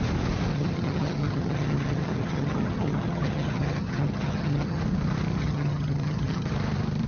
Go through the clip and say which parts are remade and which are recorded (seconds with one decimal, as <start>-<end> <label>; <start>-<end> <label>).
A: 0.0-0.5 recorded; 0.5-4.8 remade; 4.8-5.4 recorded; 5.4-6.5 remade; 6.5-7.1 recorded